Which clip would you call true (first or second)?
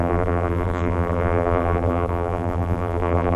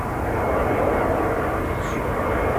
second